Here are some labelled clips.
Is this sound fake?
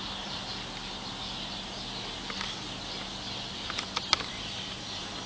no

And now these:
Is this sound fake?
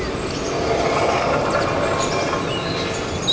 no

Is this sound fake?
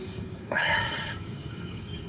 yes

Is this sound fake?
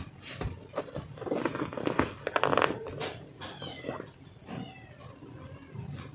no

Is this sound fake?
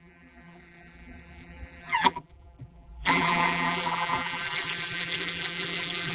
yes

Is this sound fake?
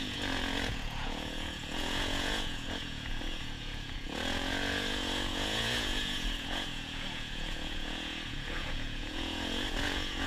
yes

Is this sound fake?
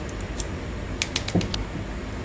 no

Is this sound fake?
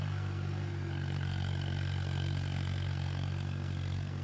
yes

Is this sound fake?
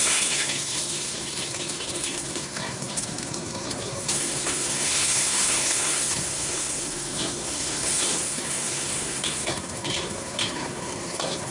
yes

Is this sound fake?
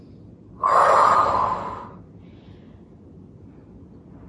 no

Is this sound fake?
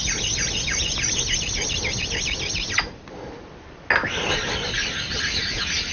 no